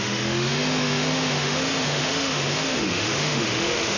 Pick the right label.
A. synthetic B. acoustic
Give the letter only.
A